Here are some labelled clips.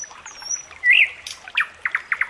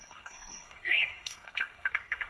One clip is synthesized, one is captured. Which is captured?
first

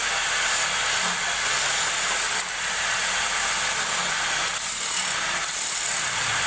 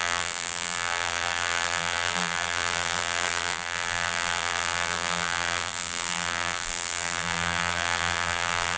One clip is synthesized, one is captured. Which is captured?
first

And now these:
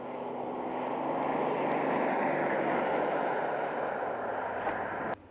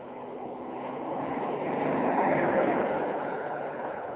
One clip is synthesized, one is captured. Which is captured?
first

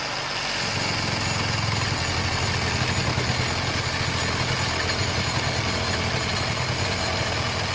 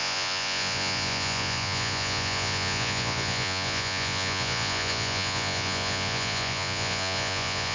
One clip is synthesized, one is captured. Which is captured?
first